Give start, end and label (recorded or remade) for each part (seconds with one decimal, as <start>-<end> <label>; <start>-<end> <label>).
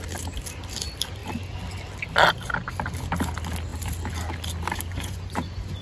0.0-4.9 recorded; 4.9-5.8 remade